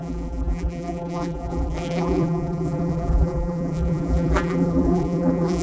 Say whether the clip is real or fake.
fake